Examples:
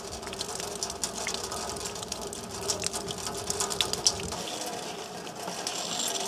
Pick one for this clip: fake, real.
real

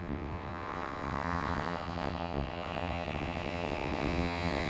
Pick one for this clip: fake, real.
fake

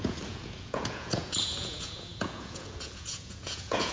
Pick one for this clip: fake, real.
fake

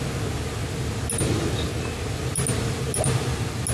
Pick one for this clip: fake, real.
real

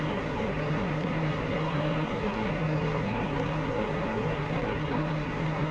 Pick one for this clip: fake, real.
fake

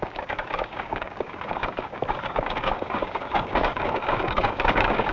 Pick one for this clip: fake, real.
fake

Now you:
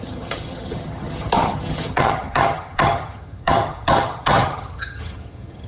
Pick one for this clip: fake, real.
fake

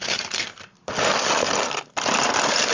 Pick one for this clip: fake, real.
real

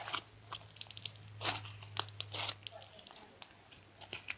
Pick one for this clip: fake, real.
real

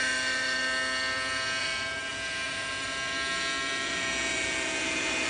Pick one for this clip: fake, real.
real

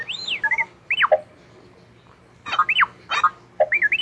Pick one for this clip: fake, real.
real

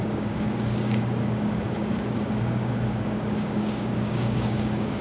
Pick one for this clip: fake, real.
fake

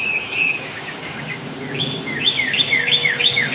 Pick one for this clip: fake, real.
fake